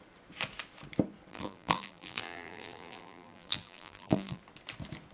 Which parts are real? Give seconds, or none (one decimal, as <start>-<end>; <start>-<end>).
0.0-1.3; 4.4-5.1